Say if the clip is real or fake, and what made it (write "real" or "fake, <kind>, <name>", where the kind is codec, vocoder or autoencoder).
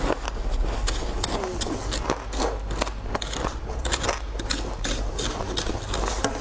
real